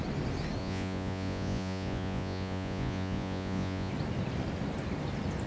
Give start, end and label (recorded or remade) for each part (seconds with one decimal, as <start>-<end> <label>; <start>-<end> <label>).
0.0-0.6 recorded; 0.6-3.9 remade; 3.9-5.5 recorded